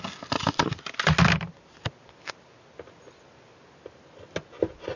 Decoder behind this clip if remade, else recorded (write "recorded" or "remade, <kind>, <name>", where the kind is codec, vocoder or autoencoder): recorded